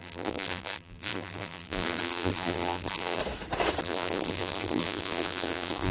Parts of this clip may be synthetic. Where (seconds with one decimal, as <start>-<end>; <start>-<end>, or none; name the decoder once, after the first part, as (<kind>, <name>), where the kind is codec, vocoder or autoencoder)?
0.0-3.2 (vocoder, BigVGAN v2); 3.8-5.9